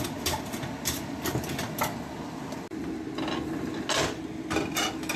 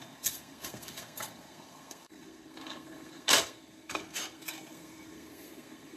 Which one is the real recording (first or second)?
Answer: first